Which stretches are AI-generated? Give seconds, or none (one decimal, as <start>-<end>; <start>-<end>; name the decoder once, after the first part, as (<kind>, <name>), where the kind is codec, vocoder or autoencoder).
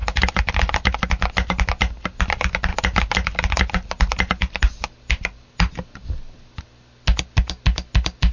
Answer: none